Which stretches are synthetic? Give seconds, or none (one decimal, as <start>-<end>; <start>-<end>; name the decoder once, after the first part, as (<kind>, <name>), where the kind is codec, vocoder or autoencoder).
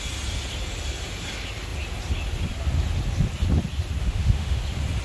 4.0-4.6 (autoencoder, DAC-VAE)